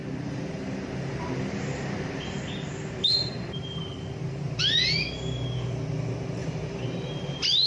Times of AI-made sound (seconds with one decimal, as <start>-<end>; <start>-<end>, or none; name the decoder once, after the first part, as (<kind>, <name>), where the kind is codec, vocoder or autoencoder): 0.0-4.6 (vocoder, BigVGAN v2); 6.4-7.7

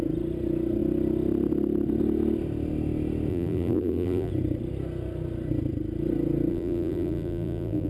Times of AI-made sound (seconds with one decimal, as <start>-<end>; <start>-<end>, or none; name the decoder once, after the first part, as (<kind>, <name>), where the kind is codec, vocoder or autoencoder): 3.3-4.3 (vocoder, BigVGAN v2); 6.5-7.9

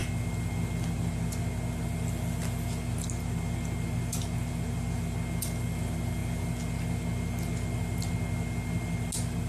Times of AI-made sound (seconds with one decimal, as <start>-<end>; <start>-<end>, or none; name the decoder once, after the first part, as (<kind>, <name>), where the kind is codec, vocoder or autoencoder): none

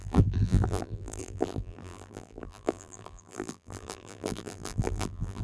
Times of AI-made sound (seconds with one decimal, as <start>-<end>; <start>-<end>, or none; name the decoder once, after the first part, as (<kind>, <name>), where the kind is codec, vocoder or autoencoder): 0.0-5.4 (vocoder, BigVGAN v2)